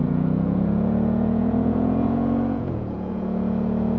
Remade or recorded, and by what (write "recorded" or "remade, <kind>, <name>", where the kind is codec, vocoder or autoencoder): remade, vocoder, Vocos